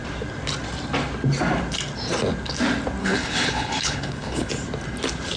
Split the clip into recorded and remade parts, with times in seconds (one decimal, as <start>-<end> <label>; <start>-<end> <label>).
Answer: 0.0-3.0 recorded; 3.0-4.5 remade; 4.5-5.4 recorded

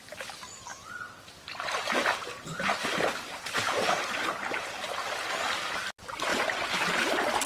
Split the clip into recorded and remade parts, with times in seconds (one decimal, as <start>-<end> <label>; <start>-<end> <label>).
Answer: 0.0-0.7 remade; 0.7-2.2 recorded; 2.2-6.3 remade; 6.3-7.5 recorded